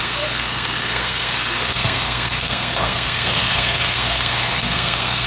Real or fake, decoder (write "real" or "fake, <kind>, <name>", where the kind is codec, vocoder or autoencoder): fake, codec, SNAC